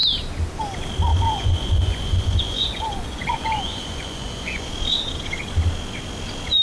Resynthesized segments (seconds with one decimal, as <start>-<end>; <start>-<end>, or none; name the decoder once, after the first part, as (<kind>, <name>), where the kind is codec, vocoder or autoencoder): 1.1-4.7 (vocoder, Vocos)